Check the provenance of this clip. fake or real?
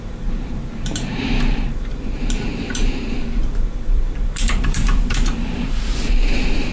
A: fake